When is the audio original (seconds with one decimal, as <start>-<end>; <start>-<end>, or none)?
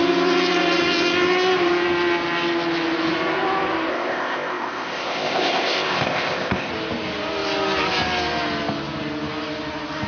0.0-3.9; 6.7-10.1